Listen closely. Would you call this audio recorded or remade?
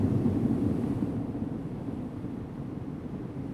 recorded